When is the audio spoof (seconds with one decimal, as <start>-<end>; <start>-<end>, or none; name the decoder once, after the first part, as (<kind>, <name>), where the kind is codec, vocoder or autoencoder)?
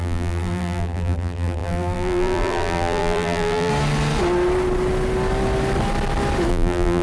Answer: 0.0-3.7 (vocoder, BigVGAN v2); 6.5-7.0